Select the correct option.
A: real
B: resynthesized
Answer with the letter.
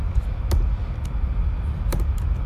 A